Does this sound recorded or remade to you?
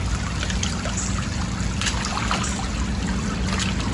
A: recorded